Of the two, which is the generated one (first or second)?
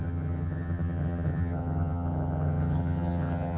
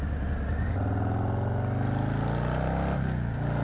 first